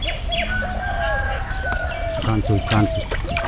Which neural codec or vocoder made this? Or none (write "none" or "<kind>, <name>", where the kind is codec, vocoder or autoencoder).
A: none